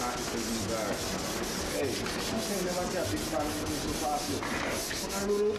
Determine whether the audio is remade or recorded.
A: recorded